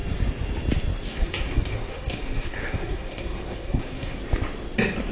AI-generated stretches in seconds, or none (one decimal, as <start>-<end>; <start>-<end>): 1.1-4.2